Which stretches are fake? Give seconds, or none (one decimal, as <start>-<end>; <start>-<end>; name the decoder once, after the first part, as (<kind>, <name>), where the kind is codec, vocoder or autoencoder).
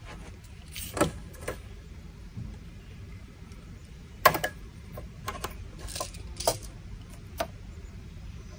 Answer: 0.0-5.3 (vocoder, BigVGAN v2); 7.8-8.6